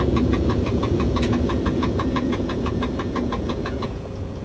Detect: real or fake fake